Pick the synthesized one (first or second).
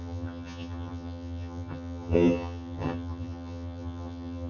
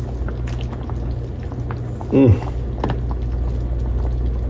first